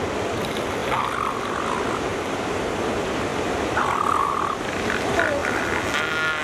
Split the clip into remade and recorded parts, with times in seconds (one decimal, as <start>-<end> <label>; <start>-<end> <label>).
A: 0.0-0.8 recorded; 0.8-1.4 remade; 1.4-2.1 recorded; 2.1-2.9 remade; 2.9-3.3 recorded; 3.3-4.8 remade; 4.8-6.4 recorded